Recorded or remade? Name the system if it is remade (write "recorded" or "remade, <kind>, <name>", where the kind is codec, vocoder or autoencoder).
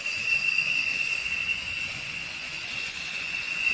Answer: remade, vocoder, Vocos